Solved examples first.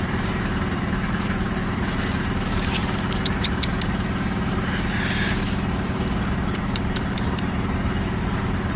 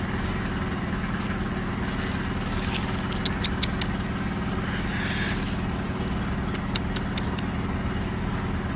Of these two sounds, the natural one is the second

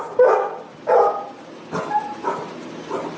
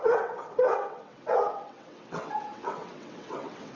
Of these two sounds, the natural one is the first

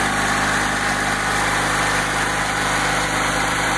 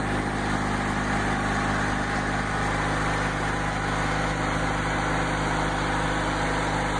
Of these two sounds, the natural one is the second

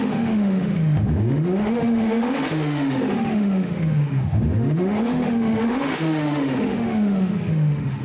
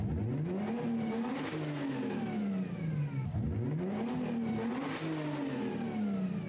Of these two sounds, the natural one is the second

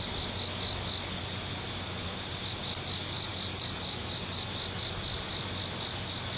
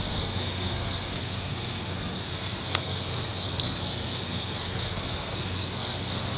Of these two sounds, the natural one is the first